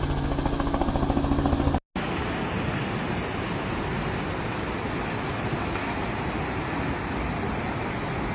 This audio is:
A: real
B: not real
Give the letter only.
A